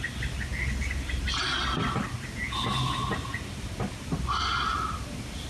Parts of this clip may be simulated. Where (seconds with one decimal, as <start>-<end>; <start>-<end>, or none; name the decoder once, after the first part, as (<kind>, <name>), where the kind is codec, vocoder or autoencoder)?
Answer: none